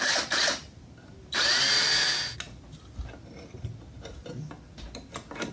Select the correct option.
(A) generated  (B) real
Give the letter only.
B